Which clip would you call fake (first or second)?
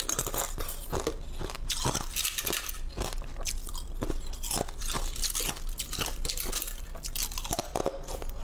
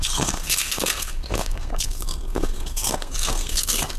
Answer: second